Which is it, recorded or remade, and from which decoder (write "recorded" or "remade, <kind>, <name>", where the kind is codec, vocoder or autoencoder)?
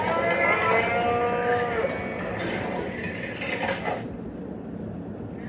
recorded